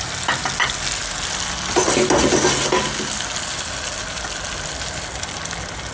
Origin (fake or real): real